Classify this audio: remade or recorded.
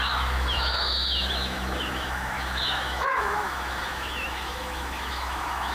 remade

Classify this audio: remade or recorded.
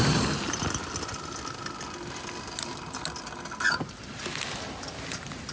recorded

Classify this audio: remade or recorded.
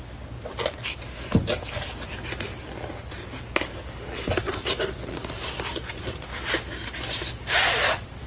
recorded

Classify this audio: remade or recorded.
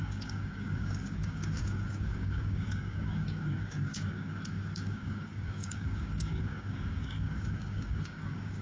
remade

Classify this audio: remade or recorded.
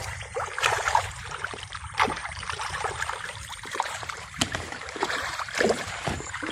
remade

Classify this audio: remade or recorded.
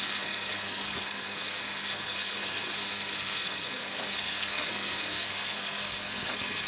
remade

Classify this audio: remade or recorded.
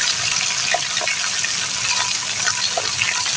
recorded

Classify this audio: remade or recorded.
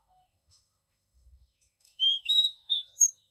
remade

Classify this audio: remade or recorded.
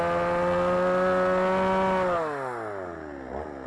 recorded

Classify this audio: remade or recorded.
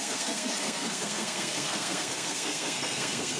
remade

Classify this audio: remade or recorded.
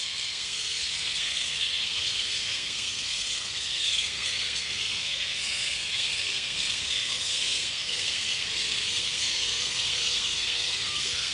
remade